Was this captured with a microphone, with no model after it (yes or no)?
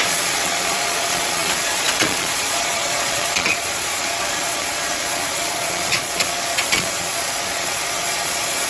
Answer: no